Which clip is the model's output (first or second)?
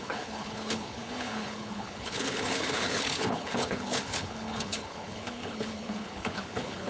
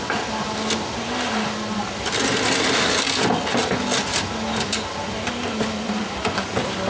first